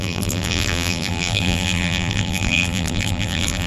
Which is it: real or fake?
fake